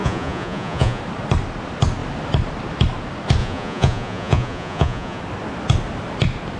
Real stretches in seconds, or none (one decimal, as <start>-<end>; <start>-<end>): 1.0-3.4; 5.2-6.6